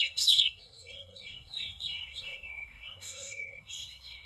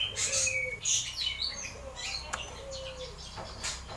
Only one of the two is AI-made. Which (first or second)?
first